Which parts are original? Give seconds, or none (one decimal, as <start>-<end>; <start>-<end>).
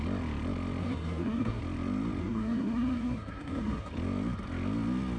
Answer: 0.0-0.8; 1.6-2.2; 3.9-5.2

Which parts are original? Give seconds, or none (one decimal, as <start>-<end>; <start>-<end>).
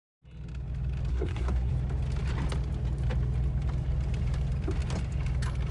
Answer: 0.0-1.1; 1.7-5.7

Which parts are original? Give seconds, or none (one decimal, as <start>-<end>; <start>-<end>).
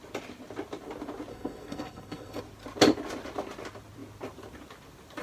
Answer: 0.0-1.3; 2.4-5.2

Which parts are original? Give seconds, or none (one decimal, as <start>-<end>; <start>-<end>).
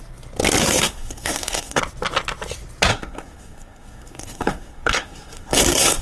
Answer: 0.0-0.6; 1.8-2.9